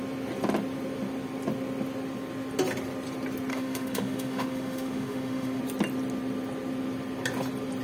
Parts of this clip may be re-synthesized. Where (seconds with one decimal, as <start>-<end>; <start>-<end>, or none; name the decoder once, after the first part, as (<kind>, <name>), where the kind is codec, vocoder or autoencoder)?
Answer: 3.5-5.6 (autoencoder, DAC-VAE)